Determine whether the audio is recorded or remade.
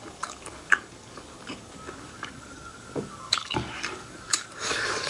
remade